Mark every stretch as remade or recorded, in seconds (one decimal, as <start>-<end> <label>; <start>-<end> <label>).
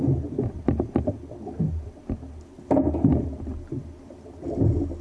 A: 0.0-5.0 recorded